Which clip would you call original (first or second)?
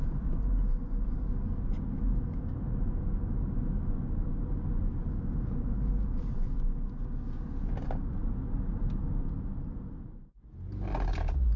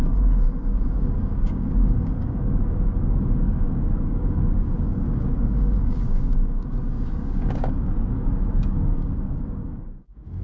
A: first